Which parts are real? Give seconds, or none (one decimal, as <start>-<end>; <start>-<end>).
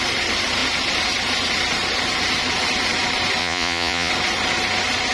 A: 0.0-3.4; 4.1-5.1